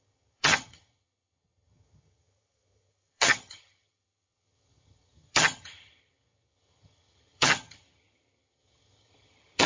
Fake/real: fake